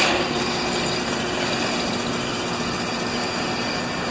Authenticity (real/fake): real